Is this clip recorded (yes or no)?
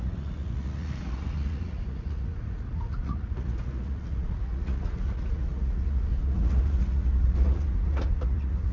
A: no